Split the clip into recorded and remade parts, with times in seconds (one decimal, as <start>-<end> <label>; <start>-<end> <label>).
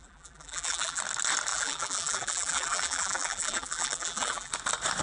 0.0-1.0 remade; 1.0-1.5 recorded; 1.5-4.5 remade; 4.5-5.0 recorded